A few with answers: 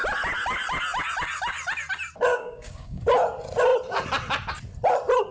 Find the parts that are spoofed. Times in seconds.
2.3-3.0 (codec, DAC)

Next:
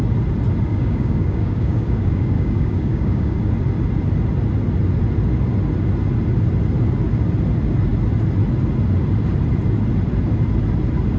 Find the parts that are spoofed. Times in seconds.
0.7-3.4 (codec, DAC)